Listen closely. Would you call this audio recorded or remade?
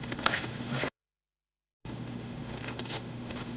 remade